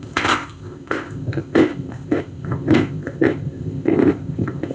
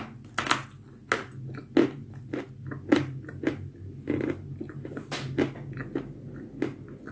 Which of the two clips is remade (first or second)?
first